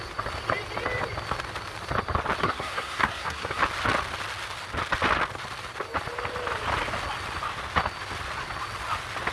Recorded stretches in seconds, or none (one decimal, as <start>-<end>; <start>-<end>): 0.0-2.4; 3.6-9.3